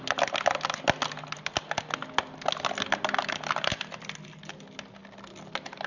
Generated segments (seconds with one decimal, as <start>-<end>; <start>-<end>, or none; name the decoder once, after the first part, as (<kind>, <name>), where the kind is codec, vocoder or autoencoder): none